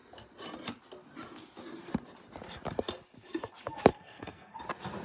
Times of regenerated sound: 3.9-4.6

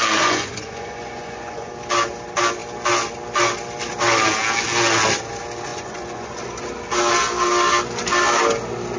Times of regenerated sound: 0.0-1.7; 5.7-6.4

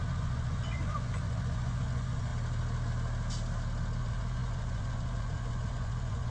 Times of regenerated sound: 0.0-2.3; 4.0-6.3

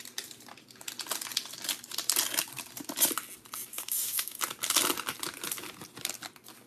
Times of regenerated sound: 3.7-4.4

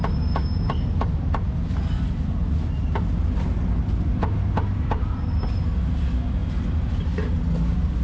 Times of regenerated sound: none

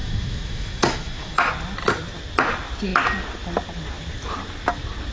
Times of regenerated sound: 0.0-1.5